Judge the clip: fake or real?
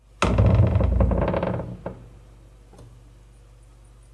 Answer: real